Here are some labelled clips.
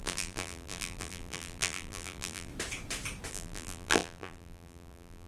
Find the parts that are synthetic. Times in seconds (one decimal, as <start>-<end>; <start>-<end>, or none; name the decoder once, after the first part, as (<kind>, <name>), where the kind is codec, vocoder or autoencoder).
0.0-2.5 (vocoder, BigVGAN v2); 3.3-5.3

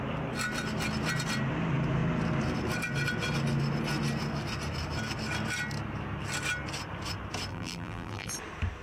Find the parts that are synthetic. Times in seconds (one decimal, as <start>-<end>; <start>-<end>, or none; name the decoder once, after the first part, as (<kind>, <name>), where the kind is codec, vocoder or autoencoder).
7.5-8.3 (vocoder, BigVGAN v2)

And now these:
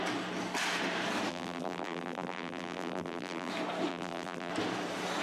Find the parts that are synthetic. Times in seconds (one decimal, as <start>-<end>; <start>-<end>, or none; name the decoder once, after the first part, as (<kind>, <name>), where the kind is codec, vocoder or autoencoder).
1.3-3.5 (vocoder, BigVGAN v2); 3.9-4.5

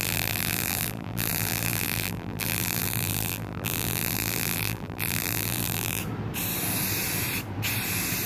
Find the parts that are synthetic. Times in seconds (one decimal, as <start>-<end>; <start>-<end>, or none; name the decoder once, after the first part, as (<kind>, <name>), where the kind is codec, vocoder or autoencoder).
0.0-6.0 (vocoder, BigVGAN v2)

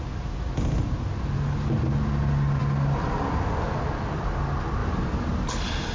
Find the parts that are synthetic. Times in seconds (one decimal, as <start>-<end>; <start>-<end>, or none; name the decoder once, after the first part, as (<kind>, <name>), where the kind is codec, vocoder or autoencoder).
none

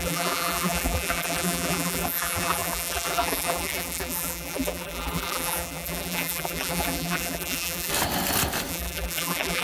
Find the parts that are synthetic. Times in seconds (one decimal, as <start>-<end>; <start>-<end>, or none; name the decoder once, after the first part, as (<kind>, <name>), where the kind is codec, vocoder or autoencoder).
0.0-7.9 (vocoder, BigVGAN v2); 8.7-9.6

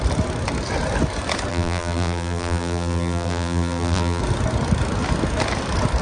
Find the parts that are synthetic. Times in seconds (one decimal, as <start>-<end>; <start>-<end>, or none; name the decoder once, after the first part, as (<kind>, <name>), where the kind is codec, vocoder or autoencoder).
1.5-4.2 (vocoder, BigVGAN v2)

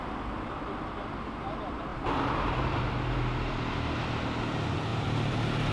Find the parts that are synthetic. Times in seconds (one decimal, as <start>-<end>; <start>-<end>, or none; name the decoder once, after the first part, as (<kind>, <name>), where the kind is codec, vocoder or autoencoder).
1.9-2.9 (vocoder, BigVGAN v2); 4.9-5.7